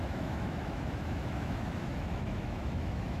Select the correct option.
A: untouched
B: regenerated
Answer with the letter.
B